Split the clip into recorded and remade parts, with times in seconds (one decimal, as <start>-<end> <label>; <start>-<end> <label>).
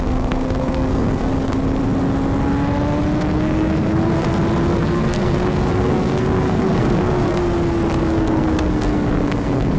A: 0.0-1.3 remade; 1.3-3.2 recorded; 3.2-4.1 remade; 4.1-4.7 recorded; 4.7-7.4 remade; 7.4-8.0 recorded; 8.0-9.8 remade